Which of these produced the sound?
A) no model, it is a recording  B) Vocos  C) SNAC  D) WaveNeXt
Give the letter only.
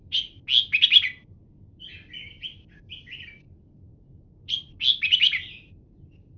A